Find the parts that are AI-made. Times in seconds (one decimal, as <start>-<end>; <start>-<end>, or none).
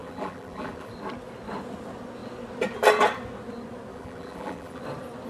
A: 0.0-0.9; 3.9-4.8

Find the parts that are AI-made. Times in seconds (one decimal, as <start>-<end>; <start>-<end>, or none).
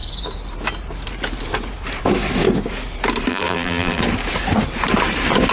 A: 3.3-4.0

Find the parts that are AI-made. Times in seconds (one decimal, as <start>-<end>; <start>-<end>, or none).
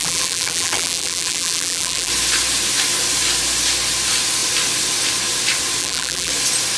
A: 0.0-2.1; 5.8-6.3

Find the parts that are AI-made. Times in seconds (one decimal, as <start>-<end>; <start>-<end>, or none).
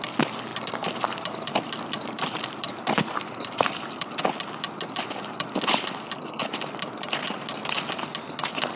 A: 0.5-4.2